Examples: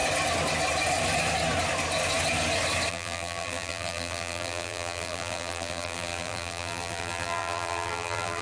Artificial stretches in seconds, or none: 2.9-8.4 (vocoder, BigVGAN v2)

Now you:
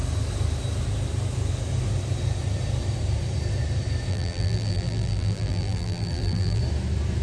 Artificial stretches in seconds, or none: 4.1-6.6 (vocoder, BigVGAN v2)

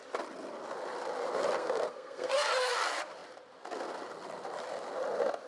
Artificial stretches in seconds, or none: 1.6-2.5 (codec, SNAC)

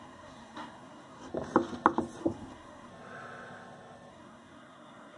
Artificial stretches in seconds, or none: 0.0-1.3 (codec, SNAC); 2.2-2.9; 4.1-5.2

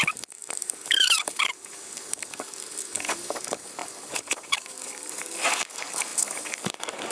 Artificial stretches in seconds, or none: 0.0-7.1 (codec, DAC)

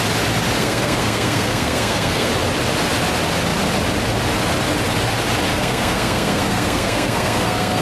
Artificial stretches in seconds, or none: 0.6-2.3 (codec, SNAC); 5.5-7.8

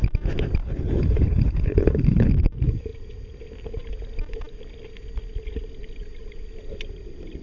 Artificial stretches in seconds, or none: 0.6-2.3 (codec, HILCodec)